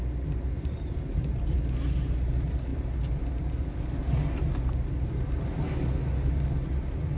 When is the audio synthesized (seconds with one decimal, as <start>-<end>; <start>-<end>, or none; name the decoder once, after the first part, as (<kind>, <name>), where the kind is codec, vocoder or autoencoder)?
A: none